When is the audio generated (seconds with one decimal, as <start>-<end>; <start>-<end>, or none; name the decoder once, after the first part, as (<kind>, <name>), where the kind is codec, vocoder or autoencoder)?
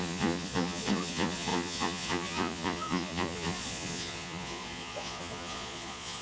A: 0.0-6.2 (vocoder, Vocos)